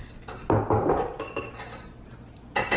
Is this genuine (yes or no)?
yes